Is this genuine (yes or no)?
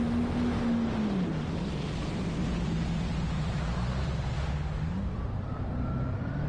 yes